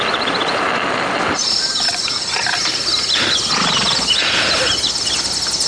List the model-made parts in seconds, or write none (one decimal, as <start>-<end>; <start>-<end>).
none